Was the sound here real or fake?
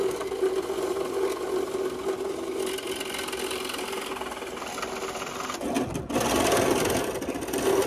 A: real